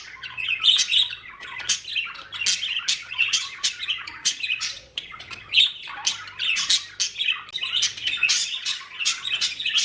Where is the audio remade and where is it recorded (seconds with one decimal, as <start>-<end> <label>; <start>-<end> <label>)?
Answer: 0.0-1.9 remade; 1.9-2.9 recorded; 2.9-5.8 remade; 5.8-7.9 recorded; 7.9-9.8 remade

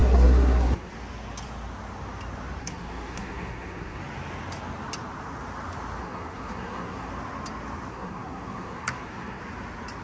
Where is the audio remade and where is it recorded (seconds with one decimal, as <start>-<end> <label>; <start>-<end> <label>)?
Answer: 0.0-0.9 remade; 0.9-2.6 recorded; 2.6-4.0 remade; 4.0-6.0 recorded; 6.0-7.1 remade; 7.1-7.9 recorded; 7.9-9.4 remade; 9.4-10.0 recorded

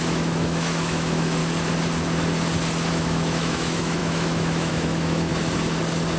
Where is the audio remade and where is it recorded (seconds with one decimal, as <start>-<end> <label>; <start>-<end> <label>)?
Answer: 0.0-1.4 remade; 1.4-2.9 recorded; 2.9-5.3 remade; 5.3-6.2 recorded

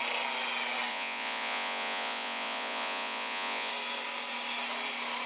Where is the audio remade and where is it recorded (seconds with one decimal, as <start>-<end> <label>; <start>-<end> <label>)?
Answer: 0.0-0.9 recorded; 0.9-3.7 remade; 3.7-5.3 recorded

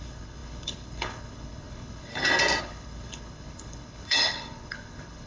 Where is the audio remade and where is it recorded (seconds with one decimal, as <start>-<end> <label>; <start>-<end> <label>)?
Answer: 0.0-2.1 remade; 2.1-2.6 recorded; 2.6-5.3 remade

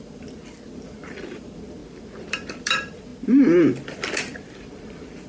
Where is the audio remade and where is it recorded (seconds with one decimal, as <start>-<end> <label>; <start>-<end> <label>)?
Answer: 0.0-1.8 remade; 1.8-2.3 recorded; 2.3-5.3 remade